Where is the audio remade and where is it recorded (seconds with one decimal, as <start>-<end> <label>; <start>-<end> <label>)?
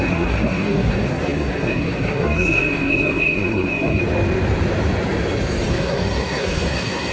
0.0-4.0 remade; 4.0-5.7 recorded; 5.7-7.1 remade